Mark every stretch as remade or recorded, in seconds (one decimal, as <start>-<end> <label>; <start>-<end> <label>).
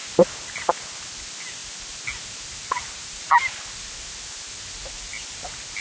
0.0-5.8 recorded